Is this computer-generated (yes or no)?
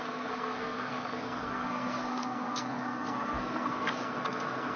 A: yes